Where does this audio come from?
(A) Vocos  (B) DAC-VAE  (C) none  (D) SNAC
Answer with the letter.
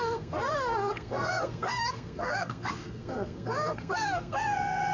D